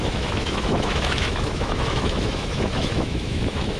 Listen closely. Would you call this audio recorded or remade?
remade